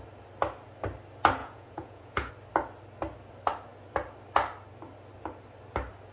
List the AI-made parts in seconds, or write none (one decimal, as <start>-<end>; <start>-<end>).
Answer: 1.4-2.3